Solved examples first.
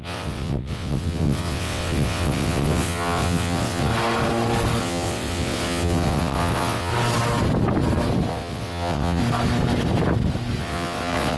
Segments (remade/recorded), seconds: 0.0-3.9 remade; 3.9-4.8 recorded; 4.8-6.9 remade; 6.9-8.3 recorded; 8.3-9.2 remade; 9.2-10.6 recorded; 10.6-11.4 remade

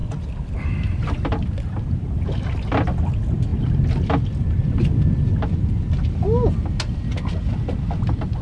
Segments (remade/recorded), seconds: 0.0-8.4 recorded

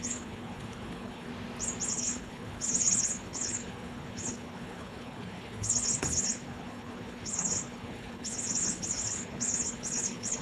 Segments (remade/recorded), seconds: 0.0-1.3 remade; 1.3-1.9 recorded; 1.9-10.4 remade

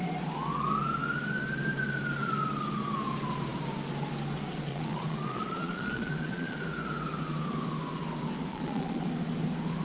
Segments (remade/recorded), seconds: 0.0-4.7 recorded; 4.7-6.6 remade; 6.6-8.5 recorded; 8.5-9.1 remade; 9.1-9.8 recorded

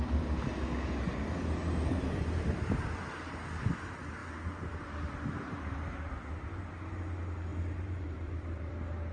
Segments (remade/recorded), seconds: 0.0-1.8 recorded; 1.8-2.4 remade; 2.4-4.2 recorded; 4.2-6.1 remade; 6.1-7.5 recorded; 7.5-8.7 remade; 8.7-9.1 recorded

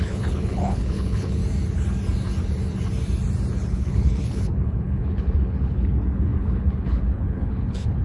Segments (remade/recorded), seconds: 0.0-1.4 remade; 1.4-3.5 recorded; 3.5-8.0 remade